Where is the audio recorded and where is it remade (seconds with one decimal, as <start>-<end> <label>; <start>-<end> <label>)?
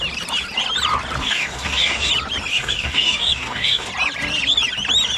0.0-1.2 recorded; 1.2-2.1 remade; 2.1-2.5 recorded; 2.5-3.9 remade; 3.9-5.2 recorded